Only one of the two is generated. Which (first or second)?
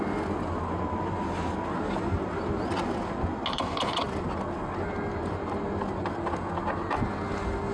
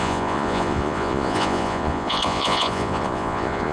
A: second